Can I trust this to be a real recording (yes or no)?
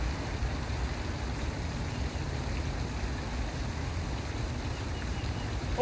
no